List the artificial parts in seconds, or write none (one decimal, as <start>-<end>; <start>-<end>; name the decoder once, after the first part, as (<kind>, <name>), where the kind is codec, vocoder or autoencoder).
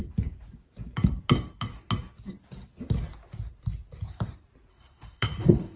4.7-5.8 (codec, HILCodec)